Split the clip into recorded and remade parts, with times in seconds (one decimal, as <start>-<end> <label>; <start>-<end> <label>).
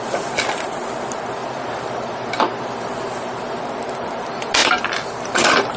0.0-1.4 recorded; 1.4-3.6 remade; 3.6-5.8 recorded